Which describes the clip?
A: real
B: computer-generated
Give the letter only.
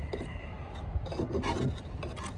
A